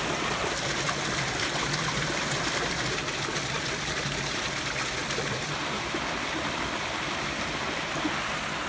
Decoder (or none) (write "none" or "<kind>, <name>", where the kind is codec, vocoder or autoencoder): vocoder, BigVGAN v2